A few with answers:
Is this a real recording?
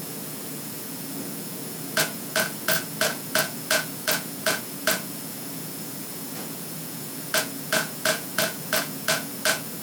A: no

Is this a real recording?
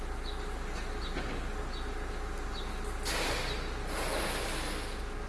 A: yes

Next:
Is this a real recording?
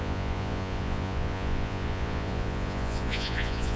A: no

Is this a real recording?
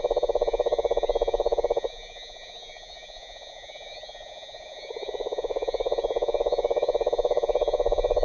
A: no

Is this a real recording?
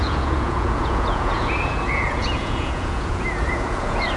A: no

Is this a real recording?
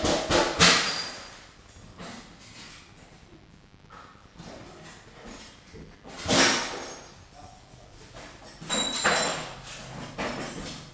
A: yes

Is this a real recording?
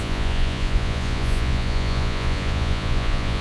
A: no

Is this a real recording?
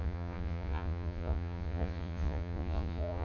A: no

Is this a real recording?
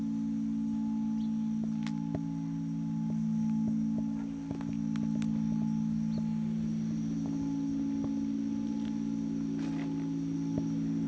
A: yes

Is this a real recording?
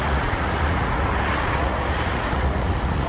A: no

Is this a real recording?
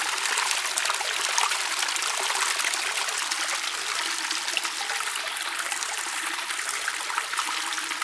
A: yes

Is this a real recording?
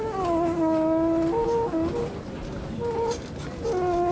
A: yes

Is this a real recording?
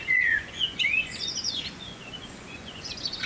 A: no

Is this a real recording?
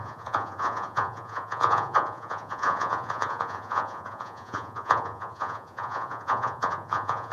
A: no